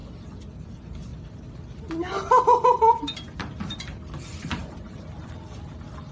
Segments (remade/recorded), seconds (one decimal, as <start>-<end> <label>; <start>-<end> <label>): 0.0-0.7 remade; 0.7-4.6 recorded; 4.6-5.2 remade; 5.2-6.1 recorded